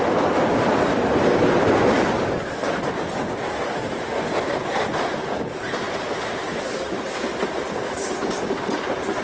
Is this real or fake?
real